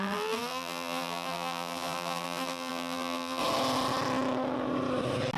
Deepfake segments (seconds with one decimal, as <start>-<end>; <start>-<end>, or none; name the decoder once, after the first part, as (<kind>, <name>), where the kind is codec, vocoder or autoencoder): 0.0-3.4 (vocoder, BigVGAN v2)

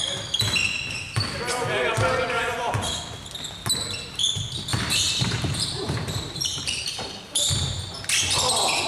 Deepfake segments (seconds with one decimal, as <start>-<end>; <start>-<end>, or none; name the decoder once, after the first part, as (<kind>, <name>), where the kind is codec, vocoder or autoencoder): 4.7-7.4 (vocoder, BigVGAN v2)